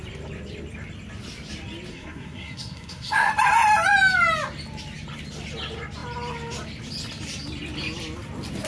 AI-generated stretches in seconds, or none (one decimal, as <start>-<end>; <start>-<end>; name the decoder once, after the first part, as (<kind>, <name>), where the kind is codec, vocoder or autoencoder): 1.9-3.3 (codec, SNAC)